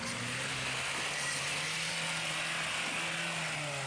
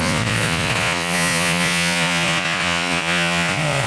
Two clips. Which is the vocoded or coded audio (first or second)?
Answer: second